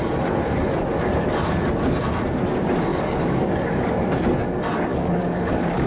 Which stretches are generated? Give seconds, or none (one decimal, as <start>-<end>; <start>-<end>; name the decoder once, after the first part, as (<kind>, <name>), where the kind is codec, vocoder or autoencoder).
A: 2.9-3.9 (codec, DAC); 4.9-5.9